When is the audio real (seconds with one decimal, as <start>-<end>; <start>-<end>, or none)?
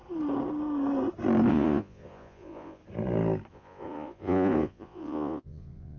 0.0-1.5; 2.8-3.5